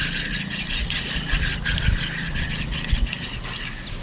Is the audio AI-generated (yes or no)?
no